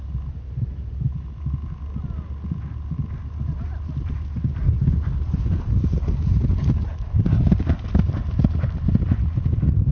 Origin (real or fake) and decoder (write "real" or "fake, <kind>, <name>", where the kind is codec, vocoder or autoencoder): real